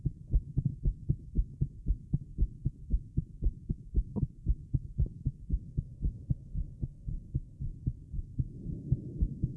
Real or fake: real